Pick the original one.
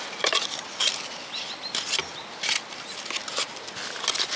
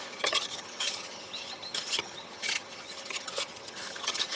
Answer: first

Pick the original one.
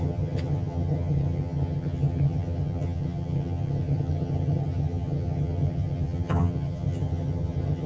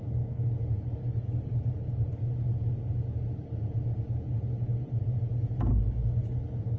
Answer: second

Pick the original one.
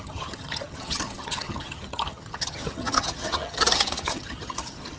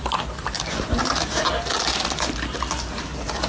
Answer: second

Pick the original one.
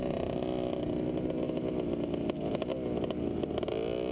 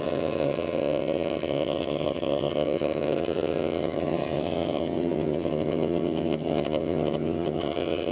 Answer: first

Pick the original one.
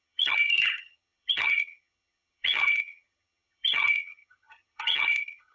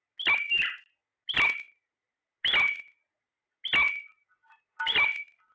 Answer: second